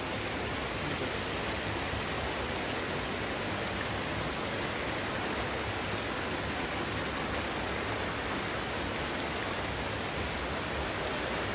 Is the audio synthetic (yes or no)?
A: no